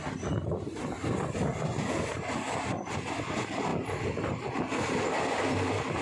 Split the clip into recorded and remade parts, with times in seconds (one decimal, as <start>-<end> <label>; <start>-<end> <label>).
0.0-6.0 recorded